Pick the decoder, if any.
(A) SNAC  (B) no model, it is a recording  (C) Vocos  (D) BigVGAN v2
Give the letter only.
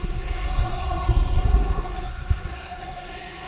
A